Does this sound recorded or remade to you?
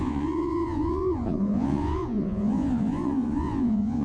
remade